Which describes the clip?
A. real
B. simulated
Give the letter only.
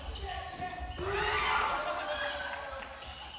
A